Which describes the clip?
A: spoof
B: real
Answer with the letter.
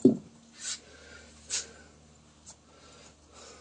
B